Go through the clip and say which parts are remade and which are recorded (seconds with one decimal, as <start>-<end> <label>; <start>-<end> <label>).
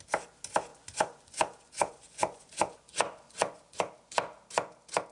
0.0-0.7 recorded; 0.7-3.8 remade; 3.8-5.1 recorded